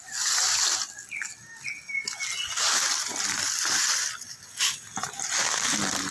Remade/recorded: recorded